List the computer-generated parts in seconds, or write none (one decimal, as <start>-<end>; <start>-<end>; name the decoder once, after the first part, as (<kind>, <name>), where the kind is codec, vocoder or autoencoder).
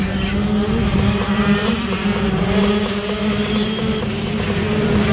0.9-4.0 (vocoder, BigVGAN v2)